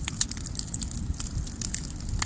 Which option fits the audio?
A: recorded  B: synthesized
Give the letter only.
A